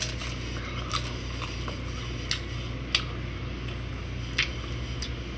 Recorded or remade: recorded